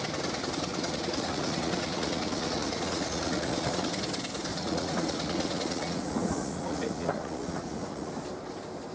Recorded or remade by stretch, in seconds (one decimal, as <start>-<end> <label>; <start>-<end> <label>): 0.0-0.7 recorded; 0.7-3.9 remade; 3.9-4.5 recorded; 4.5-8.1 remade; 8.1-8.9 recorded